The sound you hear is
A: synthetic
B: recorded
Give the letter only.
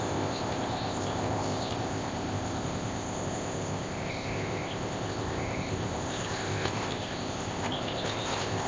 A